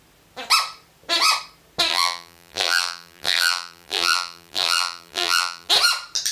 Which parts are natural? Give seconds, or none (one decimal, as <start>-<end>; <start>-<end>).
0.0-1.9; 5.7-6.3